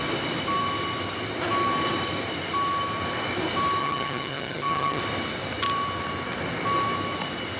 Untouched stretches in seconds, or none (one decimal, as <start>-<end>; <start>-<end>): 0.0-3.8; 5.0-7.6